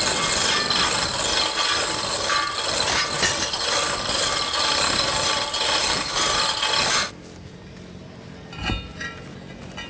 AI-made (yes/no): no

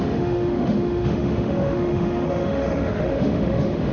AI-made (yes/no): yes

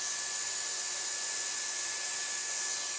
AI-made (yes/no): yes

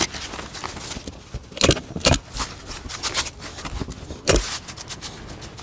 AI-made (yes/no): no